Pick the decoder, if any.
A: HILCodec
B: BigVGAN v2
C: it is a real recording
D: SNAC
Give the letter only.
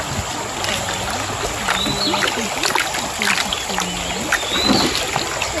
C